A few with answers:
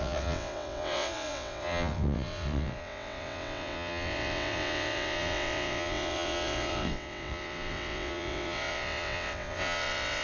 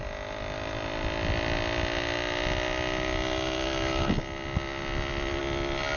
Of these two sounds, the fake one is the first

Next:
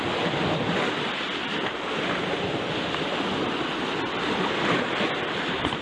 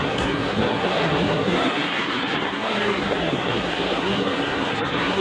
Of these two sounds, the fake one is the second